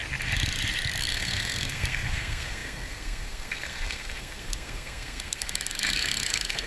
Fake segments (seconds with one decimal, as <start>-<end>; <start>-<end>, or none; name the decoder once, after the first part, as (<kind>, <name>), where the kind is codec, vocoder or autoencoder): 1.1-6.7 (codec, SNAC)